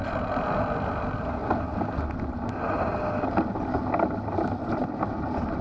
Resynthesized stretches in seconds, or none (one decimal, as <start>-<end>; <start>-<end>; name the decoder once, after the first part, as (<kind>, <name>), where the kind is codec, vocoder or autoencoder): none